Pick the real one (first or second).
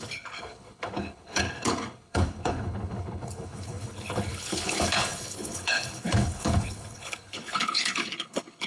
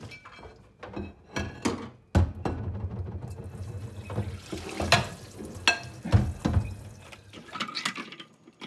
second